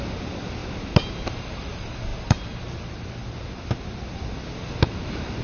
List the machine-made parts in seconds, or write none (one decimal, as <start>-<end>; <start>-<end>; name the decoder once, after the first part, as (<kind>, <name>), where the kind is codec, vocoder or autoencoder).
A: none